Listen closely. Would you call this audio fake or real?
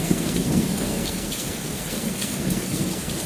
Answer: fake